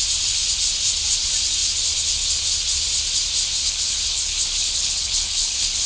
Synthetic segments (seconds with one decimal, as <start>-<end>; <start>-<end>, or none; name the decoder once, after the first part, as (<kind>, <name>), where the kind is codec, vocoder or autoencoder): 3.6-5.9 (codec, HILCodec)